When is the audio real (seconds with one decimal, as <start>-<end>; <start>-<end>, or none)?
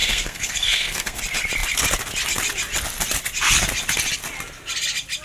1.2-5.2